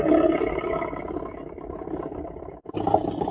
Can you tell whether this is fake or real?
real